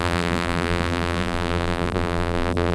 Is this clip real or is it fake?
fake